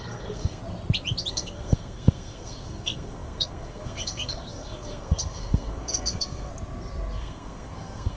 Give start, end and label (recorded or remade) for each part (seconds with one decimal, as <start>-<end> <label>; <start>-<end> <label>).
0.0-0.6 remade; 0.6-1.3 recorded; 1.3-6.5 remade; 6.5-7.2 recorded; 7.2-8.2 remade